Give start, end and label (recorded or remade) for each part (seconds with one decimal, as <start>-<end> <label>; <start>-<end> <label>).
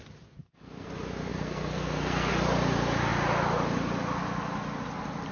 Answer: 0.0-0.4 recorded; 0.4-0.9 remade; 0.9-1.3 recorded; 1.3-2.3 remade; 2.3-5.3 recorded